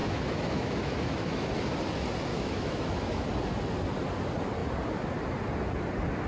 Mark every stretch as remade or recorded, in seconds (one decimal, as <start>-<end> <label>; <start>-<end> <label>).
0.0-1.5 remade; 1.5-2.3 recorded; 2.3-3.3 remade; 3.3-6.3 recorded